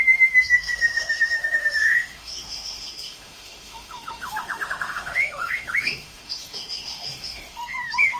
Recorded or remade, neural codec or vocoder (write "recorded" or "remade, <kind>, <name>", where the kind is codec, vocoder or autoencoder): remade, autoencoder, DAC-VAE